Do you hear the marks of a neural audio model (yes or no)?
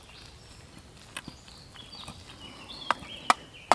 no